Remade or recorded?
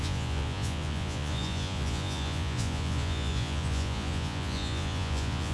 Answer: remade